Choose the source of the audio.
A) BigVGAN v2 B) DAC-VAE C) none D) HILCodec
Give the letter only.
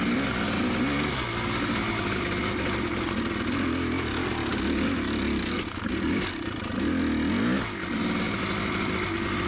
C